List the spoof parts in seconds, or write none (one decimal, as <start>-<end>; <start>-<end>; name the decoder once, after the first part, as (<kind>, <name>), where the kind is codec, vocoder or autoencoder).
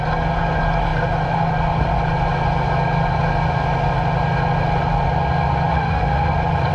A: 5.7-6.3 (autoencoder, DAC-VAE)